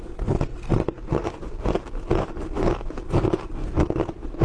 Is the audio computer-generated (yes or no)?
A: no